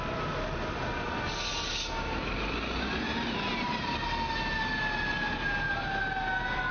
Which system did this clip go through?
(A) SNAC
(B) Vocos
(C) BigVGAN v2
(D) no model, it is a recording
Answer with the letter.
D